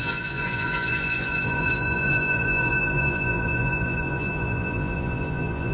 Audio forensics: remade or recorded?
remade